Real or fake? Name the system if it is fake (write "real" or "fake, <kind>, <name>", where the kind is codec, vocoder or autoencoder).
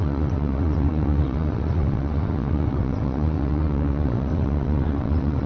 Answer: fake, vocoder, WaveNeXt